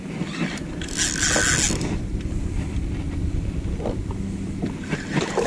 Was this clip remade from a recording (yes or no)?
no